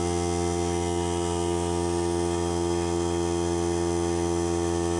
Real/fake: real